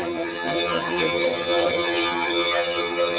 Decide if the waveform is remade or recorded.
remade